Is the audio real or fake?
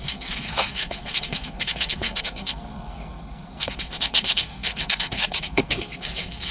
fake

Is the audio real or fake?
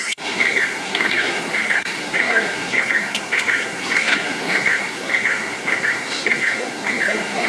fake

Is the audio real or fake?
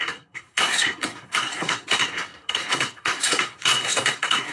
fake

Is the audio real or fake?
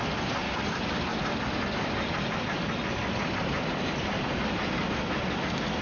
real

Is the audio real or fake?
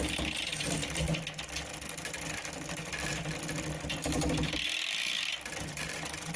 real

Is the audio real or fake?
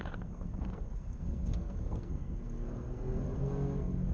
fake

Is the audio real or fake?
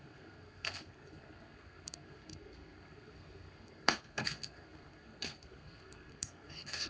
fake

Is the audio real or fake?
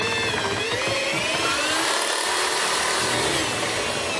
real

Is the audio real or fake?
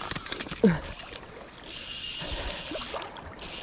real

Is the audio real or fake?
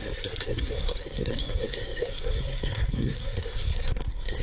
fake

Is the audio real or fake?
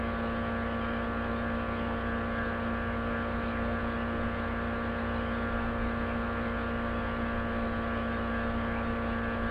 real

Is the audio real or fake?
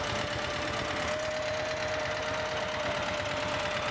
real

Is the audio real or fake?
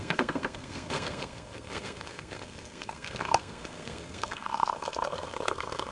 fake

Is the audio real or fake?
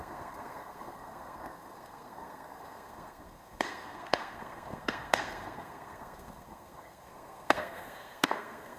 fake